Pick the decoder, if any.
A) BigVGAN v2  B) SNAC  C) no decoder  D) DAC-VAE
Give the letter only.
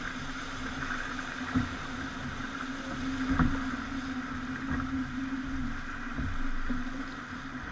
C